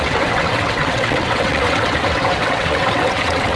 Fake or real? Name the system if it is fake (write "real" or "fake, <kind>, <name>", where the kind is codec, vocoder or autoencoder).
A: fake, vocoder, WaveNeXt